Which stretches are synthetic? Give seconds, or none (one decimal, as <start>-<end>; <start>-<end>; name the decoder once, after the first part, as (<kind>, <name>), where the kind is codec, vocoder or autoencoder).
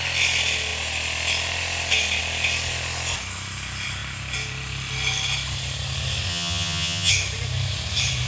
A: 6.3-7.1 (vocoder, HiFi-GAN)